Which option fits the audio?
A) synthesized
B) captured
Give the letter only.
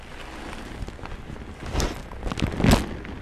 B